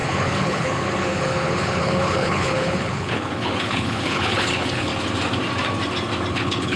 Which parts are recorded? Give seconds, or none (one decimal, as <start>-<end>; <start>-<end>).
4.9-6.3